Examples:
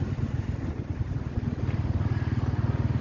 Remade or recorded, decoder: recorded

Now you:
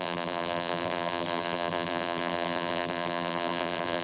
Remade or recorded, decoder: remade, vocoder, BigVGAN v2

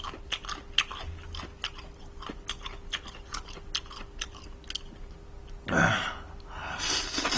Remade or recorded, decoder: recorded